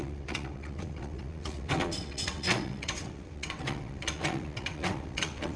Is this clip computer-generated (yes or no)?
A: yes